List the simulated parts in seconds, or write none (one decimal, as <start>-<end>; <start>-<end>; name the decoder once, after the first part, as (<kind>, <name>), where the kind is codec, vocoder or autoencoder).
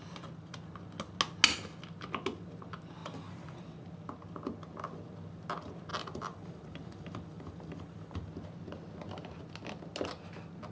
3.0-3.6 (vocoder, BigVGAN v2); 5.9-8.3